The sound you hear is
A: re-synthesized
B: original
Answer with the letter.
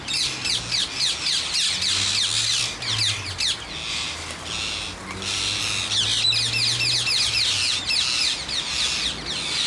B